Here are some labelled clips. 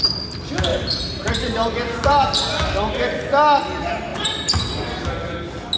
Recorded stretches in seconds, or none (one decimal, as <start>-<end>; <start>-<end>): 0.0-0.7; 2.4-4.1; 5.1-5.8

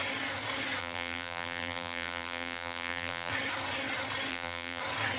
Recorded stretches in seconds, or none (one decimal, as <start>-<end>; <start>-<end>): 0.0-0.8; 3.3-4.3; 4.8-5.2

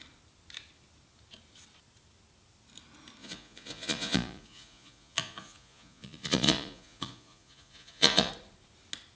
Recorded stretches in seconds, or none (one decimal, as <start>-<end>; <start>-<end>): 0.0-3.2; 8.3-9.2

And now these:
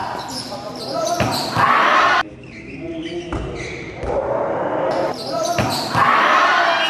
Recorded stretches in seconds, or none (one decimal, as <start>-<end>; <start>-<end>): 0.0-6.9

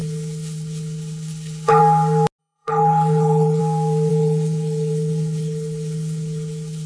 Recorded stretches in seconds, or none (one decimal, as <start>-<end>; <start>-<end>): 1.8-2.4; 3.6-4.1

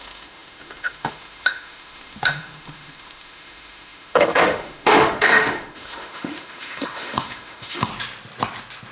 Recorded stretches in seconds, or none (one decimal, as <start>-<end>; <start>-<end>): 7.9-8.9

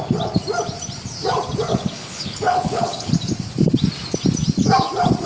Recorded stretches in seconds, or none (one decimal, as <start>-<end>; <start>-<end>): 0.0-1.7; 3.1-5.3

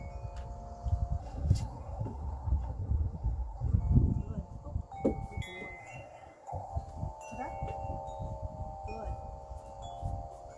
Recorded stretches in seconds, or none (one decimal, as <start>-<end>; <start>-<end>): 0.0-1.2; 3.8-5.8; 6.7-10.6